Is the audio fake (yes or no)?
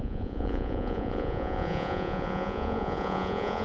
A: yes